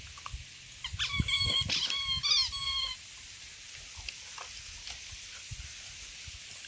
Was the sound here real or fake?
real